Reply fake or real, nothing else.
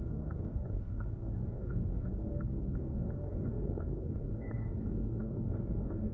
fake